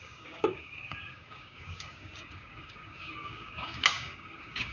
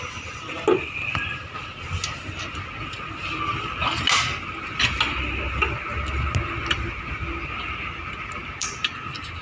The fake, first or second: first